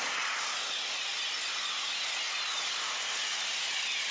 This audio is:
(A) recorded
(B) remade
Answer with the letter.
A